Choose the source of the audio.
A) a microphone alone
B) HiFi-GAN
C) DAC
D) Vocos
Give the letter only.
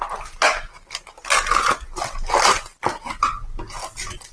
A